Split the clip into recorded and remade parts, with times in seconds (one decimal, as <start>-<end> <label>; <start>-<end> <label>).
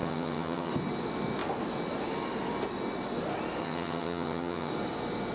0.0-0.7 remade; 0.7-3.6 recorded; 3.6-4.7 remade; 4.7-5.3 recorded